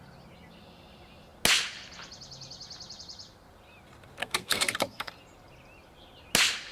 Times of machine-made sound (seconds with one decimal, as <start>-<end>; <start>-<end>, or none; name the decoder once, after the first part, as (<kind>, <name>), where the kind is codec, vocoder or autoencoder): 4.2-5.1 (codec, SNAC)